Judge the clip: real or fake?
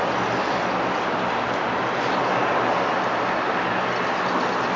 real